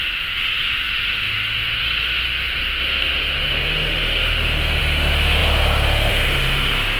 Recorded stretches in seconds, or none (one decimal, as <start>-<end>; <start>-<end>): none